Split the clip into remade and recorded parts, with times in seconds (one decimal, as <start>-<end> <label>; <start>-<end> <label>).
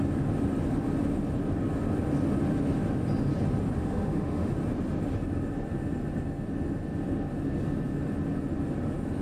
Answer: 0.0-3.8 recorded; 3.8-4.5 remade; 4.5-9.2 recorded